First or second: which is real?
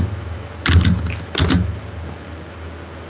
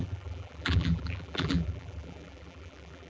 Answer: first